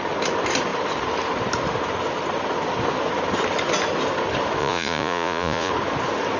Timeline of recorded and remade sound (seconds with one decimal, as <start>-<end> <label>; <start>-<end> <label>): 0.0-4.6 recorded; 4.6-5.7 remade; 5.7-6.4 recorded